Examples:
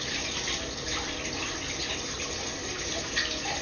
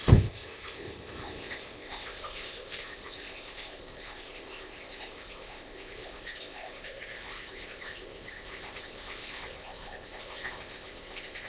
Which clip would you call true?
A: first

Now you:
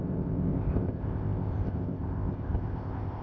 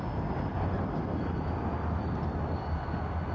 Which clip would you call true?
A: second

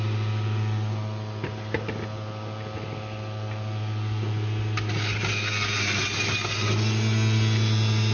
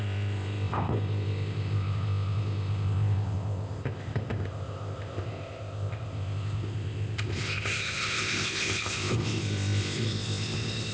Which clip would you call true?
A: first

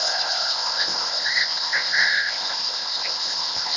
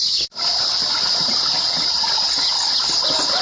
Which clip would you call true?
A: second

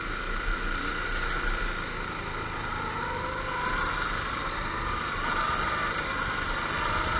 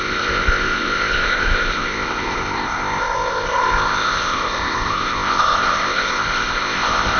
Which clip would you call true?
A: first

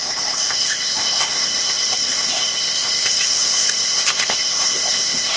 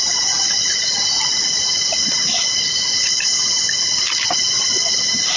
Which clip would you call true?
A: second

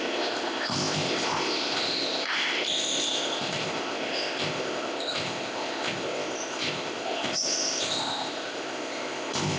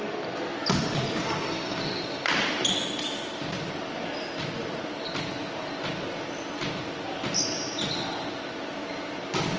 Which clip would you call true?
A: second